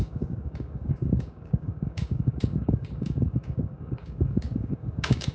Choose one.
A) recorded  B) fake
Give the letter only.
B